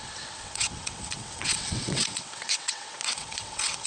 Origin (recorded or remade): remade